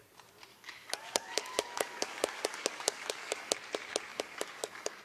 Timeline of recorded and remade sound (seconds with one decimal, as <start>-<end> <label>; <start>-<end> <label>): 0.0-0.5 recorded; 0.5-3.5 remade; 3.5-4.1 recorded; 4.1-5.0 remade